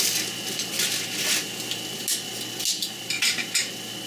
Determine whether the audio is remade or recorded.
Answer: recorded